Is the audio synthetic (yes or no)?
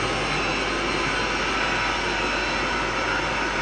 no